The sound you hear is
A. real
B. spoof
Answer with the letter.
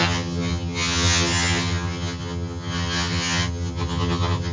B